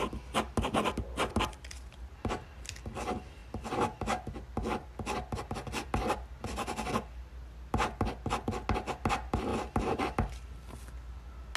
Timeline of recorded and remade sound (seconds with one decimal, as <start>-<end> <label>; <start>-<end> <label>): 0.0-11.6 recorded